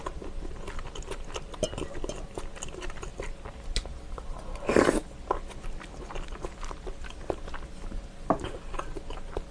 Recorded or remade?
recorded